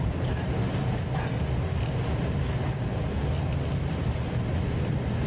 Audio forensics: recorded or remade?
recorded